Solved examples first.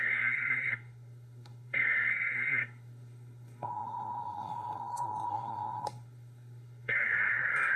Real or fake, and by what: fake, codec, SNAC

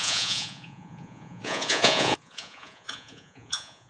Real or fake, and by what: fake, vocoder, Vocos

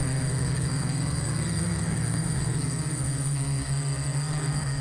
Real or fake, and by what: fake, codec, SNAC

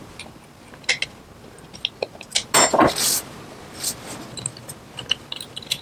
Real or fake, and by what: real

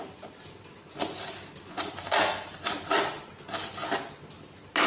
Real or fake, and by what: real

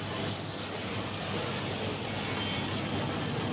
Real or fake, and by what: real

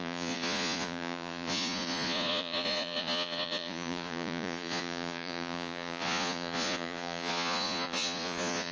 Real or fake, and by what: fake, vocoder, Vocos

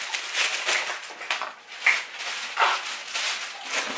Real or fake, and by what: real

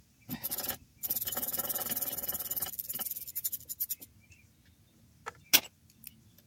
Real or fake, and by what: real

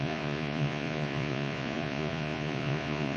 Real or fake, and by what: fake, vocoder, Vocos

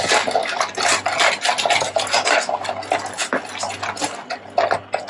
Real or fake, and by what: real